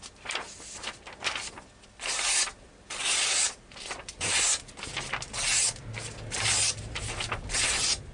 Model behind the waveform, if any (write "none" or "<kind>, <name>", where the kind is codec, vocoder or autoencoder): none